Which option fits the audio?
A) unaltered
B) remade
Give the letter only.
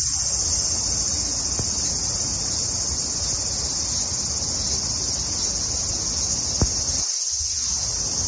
A